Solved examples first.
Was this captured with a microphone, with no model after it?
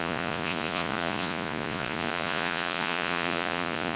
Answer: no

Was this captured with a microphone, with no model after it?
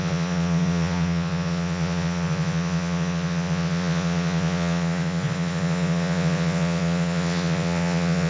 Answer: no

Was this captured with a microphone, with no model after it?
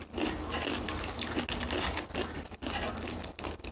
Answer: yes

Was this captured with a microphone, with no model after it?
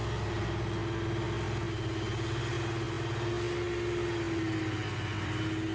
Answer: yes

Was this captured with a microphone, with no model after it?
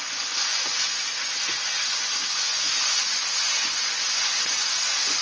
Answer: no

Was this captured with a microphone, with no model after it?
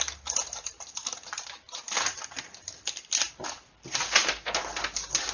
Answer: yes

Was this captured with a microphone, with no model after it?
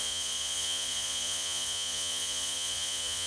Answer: no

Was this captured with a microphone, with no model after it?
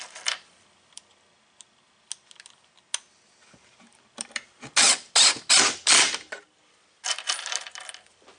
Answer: yes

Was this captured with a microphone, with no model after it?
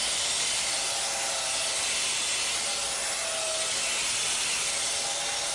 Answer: yes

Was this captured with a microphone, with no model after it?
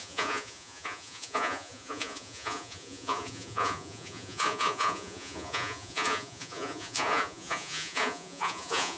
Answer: no